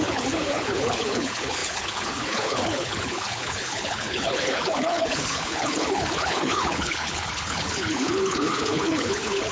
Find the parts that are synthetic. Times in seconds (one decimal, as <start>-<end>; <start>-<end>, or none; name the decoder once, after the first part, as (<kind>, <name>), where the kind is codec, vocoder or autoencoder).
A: 0.0-9.5 (codec, HILCodec)